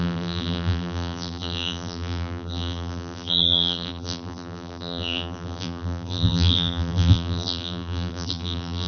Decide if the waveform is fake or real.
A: fake